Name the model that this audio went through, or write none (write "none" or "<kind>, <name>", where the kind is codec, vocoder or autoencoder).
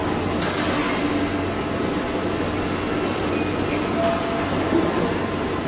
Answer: none